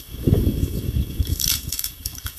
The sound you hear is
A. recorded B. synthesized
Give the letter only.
B